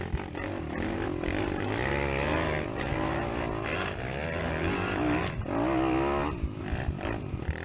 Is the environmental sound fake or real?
real